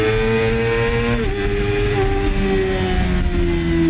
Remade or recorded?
recorded